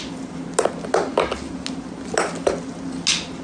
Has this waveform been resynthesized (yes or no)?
no